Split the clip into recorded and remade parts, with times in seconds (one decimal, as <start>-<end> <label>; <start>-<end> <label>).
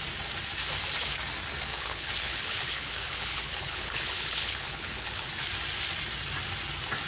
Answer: 0.0-1.7 recorded; 1.7-5.3 remade; 5.3-7.1 recorded